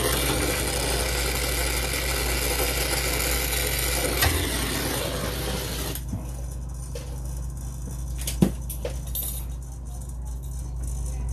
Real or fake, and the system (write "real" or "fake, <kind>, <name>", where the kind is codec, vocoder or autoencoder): real